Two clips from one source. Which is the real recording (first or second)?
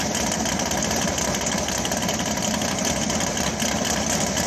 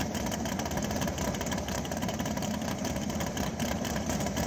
first